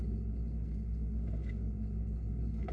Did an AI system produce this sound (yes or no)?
yes